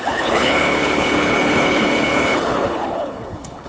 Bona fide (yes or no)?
no